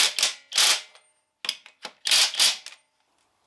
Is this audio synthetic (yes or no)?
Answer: no